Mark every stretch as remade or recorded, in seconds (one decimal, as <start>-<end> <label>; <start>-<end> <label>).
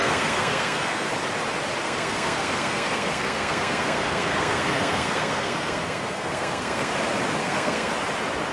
0.0-1.1 remade; 1.1-1.8 recorded; 1.8-6.9 remade; 6.9-7.4 recorded; 7.4-7.9 remade; 7.9-8.5 recorded